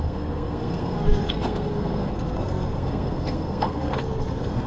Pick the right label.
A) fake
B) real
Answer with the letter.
A